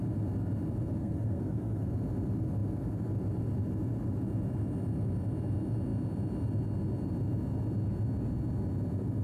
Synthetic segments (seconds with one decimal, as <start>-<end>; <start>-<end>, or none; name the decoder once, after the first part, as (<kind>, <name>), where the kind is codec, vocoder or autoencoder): 1.0-1.9 (codec, SNAC)